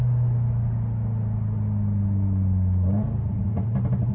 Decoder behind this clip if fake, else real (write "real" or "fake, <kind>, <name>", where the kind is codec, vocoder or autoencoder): real